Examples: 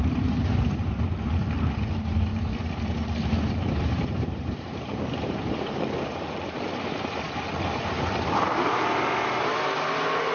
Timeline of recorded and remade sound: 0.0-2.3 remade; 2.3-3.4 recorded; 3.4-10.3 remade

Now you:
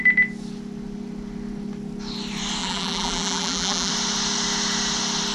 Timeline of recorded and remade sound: 0.0-2.6 recorded; 2.6-3.9 remade; 3.9-5.3 recorded

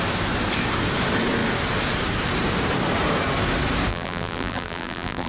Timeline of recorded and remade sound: 0.0-3.9 recorded; 3.9-5.3 remade

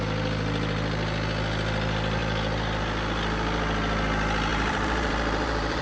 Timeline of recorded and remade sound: 0.0-4.5 recorded; 4.5-5.8 remade